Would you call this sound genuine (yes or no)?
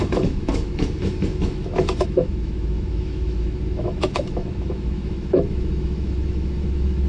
no